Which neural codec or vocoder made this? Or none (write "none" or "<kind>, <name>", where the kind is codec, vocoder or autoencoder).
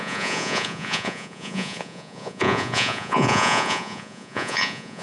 vocoder, Vocos